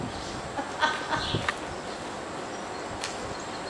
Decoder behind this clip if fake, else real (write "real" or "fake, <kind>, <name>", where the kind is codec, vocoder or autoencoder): real